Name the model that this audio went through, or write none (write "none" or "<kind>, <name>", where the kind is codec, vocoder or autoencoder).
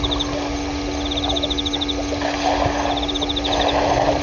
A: none